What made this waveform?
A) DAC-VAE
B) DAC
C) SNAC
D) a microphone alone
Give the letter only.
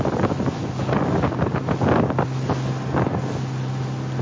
D